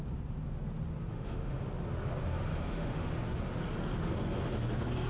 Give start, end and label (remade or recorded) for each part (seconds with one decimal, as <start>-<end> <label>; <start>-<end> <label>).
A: 0.0-1.1 recorded; 1.1-1.7 remade; 1.7-2.5 recorded; 2.5-3.1 remade; 3.1-5.1 recorded

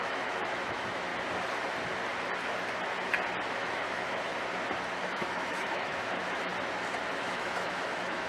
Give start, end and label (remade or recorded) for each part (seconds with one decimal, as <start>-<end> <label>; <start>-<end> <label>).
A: 0.0-1.1 remade; 1.1-3.5 recorded; 3.5-4.3 remade; 4.3-5.0 recorded; 5.0-6.5 remade; 6.5-7.1 recorded; 7.1-8.3 remade

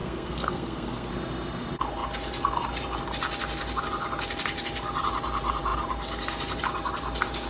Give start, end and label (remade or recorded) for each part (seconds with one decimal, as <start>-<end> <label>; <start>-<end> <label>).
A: 0.0-1.1 remade; 1.1-7.5 recorded

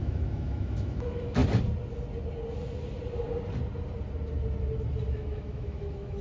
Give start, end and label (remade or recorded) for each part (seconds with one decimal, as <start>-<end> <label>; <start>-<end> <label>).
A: 0.0-1.4 remade; 1.4-5.1 recorded; 5.1-6.2 remade

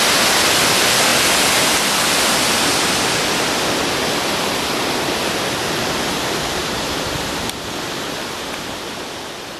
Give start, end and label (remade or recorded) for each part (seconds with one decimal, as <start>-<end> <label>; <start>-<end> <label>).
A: 0.0-6.6 recorded; 6.6-7.6 remade; 7.6-9.6 recorded

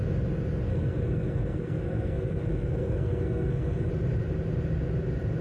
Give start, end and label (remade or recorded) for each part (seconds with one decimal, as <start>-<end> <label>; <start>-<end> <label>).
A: 0.0-0.7 recorded; 0.7-3.9 remade; 3.9-5.4 recorded